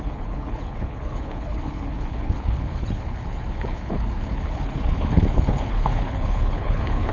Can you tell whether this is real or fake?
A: fake